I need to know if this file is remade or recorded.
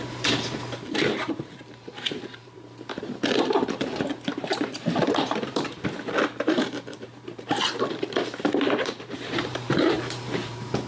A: remade